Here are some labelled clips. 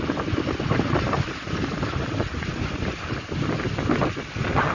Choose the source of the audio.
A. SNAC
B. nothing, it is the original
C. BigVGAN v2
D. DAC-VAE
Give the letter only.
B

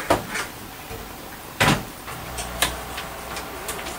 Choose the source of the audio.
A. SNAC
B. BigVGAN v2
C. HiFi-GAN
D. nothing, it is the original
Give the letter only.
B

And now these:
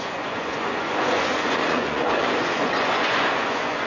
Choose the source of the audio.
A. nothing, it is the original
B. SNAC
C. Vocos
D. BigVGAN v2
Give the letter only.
C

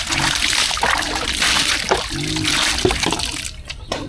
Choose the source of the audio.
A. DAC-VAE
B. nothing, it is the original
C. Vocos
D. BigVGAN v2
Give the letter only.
B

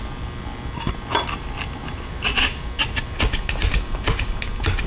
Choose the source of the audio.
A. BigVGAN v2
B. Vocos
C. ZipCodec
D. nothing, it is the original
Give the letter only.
D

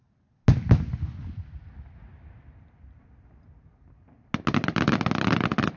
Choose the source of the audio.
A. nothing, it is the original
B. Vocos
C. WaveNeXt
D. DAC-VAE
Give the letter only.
A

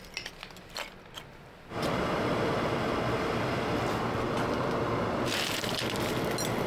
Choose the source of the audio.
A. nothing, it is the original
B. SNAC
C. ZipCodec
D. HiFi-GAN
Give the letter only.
A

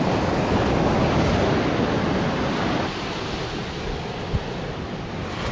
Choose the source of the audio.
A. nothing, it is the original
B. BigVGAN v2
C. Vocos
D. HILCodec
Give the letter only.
A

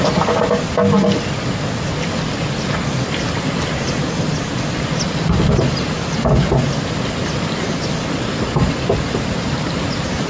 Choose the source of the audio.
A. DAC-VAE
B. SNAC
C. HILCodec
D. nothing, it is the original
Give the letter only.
D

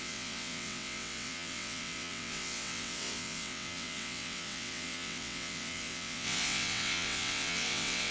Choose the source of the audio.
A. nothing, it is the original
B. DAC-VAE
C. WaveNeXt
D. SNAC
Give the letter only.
C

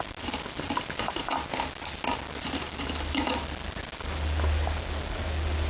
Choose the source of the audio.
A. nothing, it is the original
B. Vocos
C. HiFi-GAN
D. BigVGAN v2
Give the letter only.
A